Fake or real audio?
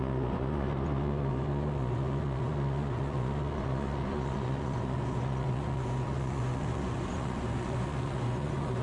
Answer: fake